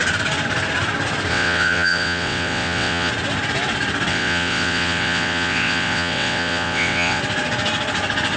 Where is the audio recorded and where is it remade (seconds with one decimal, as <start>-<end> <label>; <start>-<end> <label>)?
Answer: 0.0-1.3 recorded; 1.3-3.1 remade; 3.1-4.1 recorded; 4.1-7.2 remade; 7.2-8.4 recorded